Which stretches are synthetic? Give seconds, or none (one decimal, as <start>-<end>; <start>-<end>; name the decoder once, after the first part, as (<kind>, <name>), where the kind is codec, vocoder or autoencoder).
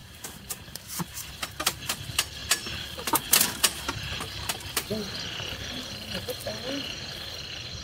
0.0-1.3 (vocoder, BigVGAN v2)